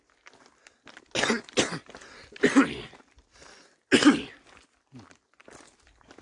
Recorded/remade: recorded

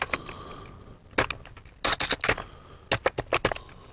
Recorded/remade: recorded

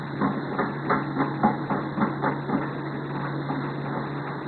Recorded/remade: recorded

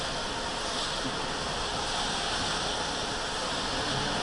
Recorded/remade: recorded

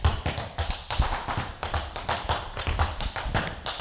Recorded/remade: recorded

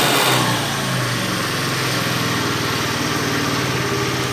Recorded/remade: recorded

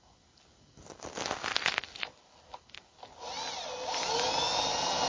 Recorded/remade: recorded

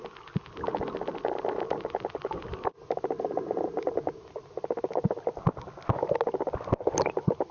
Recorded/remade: recorded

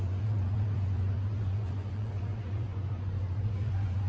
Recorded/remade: remade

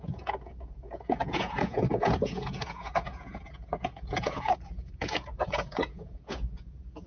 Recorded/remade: remade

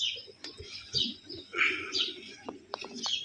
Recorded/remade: remade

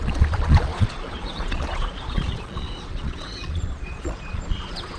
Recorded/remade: remade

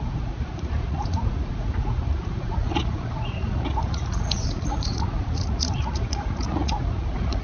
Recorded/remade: remade